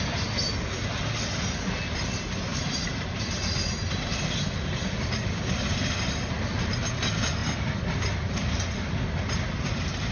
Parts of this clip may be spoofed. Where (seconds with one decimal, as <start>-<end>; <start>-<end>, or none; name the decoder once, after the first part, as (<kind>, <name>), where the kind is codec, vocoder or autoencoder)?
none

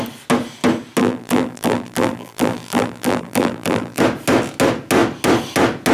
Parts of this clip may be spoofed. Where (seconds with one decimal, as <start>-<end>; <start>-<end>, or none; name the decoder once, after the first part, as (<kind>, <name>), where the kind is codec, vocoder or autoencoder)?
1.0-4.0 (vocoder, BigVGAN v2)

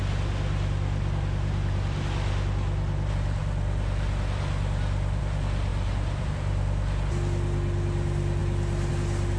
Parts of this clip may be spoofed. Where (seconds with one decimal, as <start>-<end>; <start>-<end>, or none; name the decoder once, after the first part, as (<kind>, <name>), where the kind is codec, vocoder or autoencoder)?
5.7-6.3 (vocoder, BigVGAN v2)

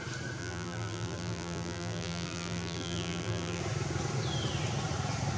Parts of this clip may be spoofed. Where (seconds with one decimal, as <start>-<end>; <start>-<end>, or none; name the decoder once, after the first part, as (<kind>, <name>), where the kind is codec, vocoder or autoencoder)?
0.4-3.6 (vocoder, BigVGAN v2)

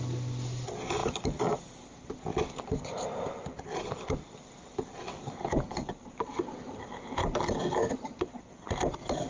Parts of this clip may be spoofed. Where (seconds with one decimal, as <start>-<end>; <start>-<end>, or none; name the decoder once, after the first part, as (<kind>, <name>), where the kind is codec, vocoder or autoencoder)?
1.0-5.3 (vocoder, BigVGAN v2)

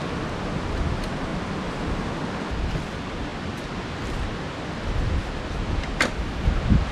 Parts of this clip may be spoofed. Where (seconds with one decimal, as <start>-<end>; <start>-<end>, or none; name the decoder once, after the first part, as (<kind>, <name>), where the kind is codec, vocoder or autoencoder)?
none

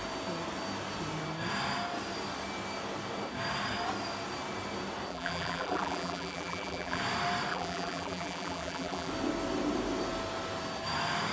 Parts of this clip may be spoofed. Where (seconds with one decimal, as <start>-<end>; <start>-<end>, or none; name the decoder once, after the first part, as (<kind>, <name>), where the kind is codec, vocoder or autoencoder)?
5.1-7.0 (vocoder, BigVGAN v2); 7.5-9.1

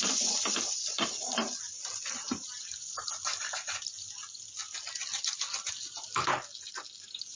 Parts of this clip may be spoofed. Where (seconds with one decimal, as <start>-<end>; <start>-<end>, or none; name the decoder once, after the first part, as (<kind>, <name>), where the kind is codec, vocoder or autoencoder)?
0.0-1.4 (vocoder, BigVGAN v2); 2.2-4.6; 5.7-6.3; 7.0-7.4